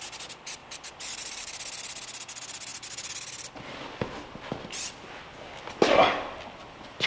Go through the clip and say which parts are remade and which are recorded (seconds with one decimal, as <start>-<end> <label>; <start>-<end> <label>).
0.0-0.6 recorded; 0.6-1.4 remade; 1.4-7.1 recorded